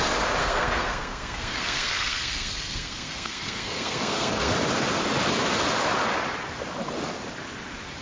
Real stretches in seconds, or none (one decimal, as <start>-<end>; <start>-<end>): 0.0-0.4; 4.5-8.0